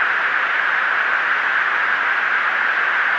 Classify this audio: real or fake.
real